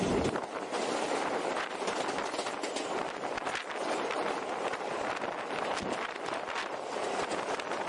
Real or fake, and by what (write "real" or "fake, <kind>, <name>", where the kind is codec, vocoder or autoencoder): real